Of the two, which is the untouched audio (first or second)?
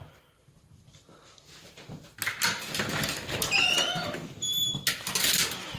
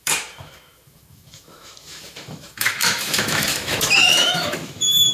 first